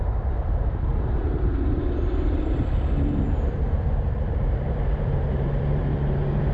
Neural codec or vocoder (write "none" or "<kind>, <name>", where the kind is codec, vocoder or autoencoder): vocoder, BigVGAN v2